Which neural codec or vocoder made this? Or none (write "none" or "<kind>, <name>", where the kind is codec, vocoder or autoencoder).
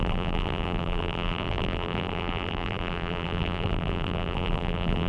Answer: vocoder, BigVGAN v2